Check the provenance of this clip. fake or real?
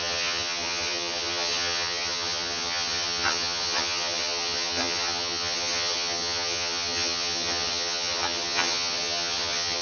fake